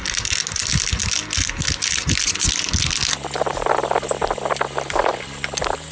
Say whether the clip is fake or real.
real